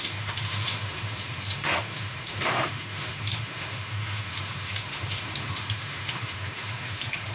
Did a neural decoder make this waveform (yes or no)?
yes